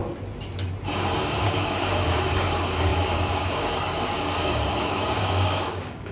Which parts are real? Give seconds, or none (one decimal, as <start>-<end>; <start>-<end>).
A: 0.0-1.2